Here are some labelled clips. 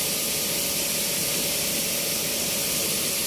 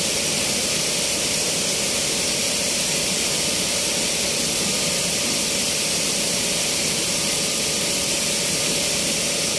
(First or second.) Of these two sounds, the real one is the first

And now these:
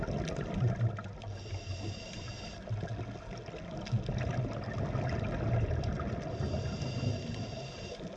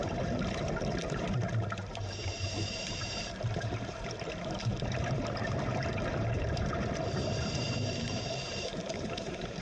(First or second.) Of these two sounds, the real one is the first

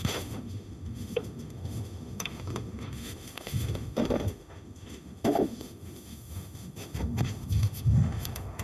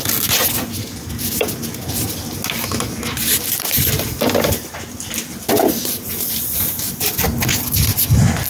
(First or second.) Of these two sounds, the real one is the second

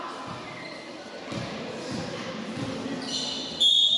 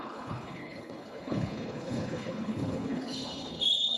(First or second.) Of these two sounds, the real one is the first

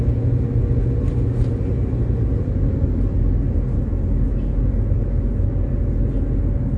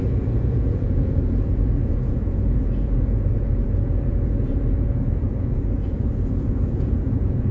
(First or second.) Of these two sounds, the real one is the first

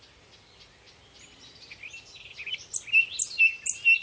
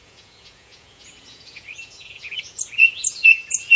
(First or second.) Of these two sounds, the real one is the first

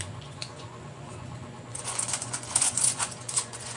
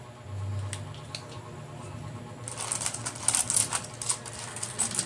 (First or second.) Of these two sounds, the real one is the second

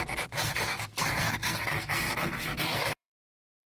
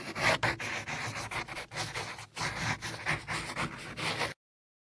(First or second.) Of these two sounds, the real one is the second